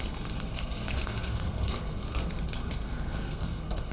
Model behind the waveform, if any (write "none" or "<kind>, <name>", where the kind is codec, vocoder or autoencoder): codec, SNAC